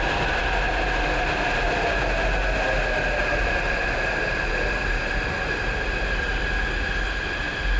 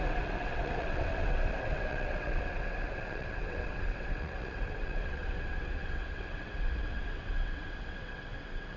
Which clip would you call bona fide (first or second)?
first